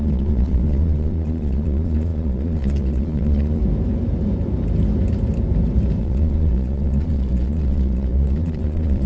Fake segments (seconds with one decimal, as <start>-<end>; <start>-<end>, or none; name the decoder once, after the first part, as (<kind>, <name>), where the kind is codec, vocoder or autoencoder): 0.0-3.6 (vocoder, Vocos); 6.0-9.1